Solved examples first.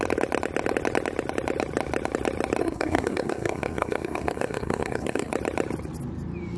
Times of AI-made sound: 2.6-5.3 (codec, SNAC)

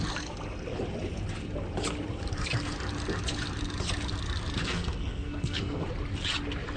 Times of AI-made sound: 4.6-5.8 (codec, SNAC)

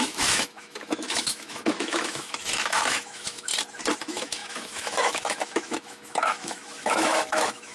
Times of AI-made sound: 0.0-3.5 (autoencoder, DAC-VAE); 4.0-7.7

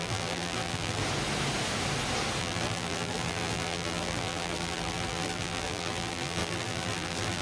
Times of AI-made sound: 0.0-1.0 (vocoder, BigVGAN v2); 2.4-7.4

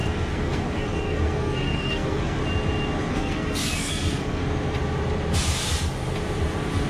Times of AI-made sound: 0.0-2.4 (codec, SNAC); 3.1-4.4

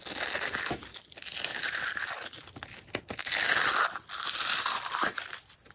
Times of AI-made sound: none

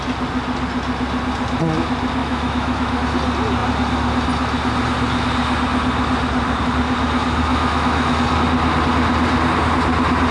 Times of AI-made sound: 2.2-3.0 (autoencoder, DAC-VAE); 7.5-8.2

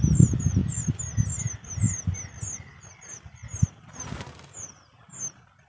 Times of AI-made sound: none